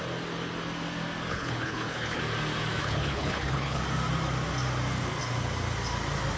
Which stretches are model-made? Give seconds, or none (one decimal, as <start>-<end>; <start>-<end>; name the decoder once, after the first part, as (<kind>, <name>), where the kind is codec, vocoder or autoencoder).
1.3-2.2 (codec, HILCodec); 2.8-3.8